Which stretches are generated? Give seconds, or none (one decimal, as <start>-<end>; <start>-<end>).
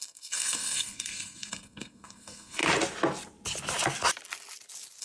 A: 0.0-2.6